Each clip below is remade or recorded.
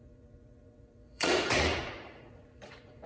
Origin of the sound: remade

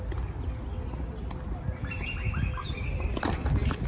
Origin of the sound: recorded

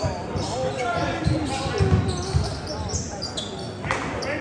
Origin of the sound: recorded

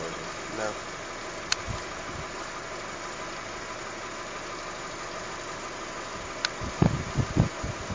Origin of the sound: recorded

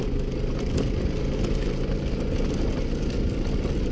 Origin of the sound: recorded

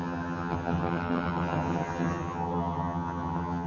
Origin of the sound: remade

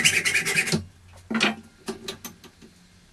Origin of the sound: recorded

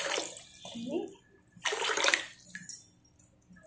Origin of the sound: recorded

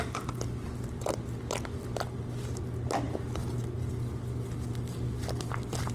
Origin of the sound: recorded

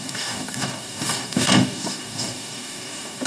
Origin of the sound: remade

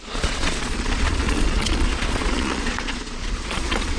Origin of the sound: remade